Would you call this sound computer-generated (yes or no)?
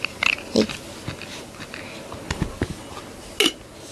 no